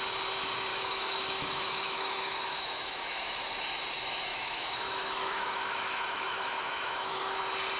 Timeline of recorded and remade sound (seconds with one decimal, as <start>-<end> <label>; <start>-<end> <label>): 0.0-0.7 recorded; 0.7-3.3 remade; 3.3-4.3 recorded; 4.3-7.2 remade; 7.2-7.8 recorded